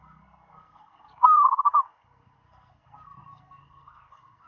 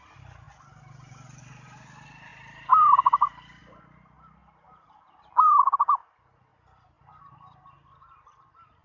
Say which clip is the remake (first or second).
first